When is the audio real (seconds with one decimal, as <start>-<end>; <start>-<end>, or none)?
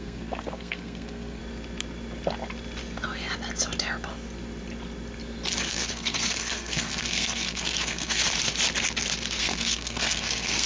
1.4-5.7; 8.2-9.4